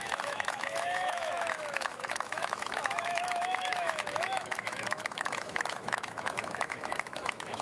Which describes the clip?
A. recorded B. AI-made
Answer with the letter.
B